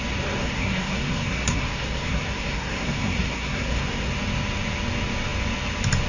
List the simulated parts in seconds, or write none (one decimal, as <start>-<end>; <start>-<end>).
0.4-4.1

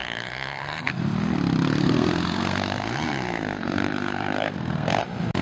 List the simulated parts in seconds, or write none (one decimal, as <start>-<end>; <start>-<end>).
0.0-1.0; 1.8-5.0

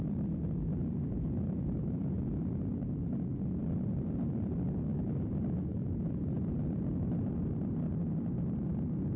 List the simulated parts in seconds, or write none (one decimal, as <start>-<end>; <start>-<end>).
0.8-2.6; 3.6-8.6